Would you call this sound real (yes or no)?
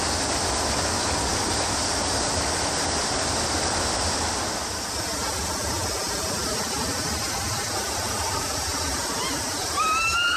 yes